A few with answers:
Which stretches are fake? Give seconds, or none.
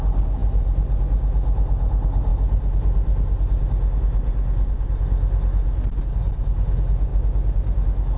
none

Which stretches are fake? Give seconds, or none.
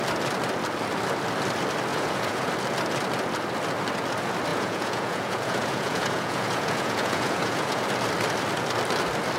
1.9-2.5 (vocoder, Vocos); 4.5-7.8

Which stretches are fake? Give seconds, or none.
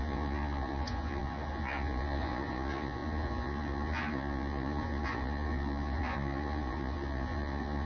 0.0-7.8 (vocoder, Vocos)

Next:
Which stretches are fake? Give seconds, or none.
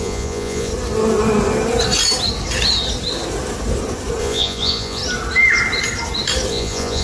0.0-0.7 (vocoder, Vocos); 4.2-5.0; 6.5-7.0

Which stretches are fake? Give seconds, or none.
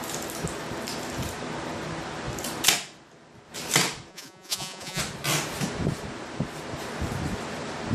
4.1-5.0 (vocoder, Vocos)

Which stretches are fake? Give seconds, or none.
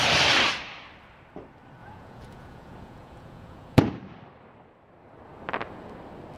1.8-3.8 (vocoder, Vocos)